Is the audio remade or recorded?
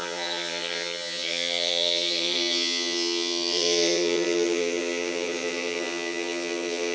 remade